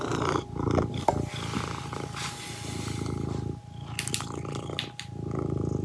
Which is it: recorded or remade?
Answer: recorded